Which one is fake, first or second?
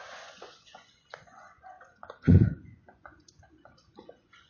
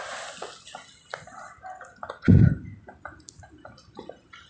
first